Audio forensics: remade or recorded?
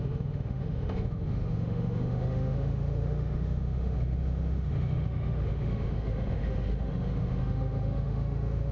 remade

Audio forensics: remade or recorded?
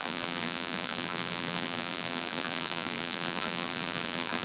remade